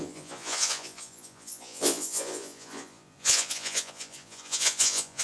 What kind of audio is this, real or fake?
fake